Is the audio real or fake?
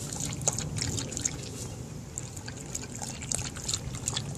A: real